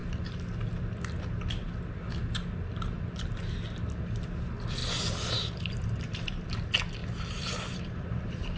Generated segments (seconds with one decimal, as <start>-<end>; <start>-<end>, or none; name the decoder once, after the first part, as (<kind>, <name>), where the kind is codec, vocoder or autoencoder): 4.8-6.5 (vocoder, BigVGAN v2); 7.0-8.6